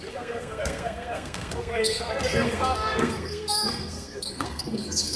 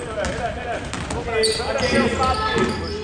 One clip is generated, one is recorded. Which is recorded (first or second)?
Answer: second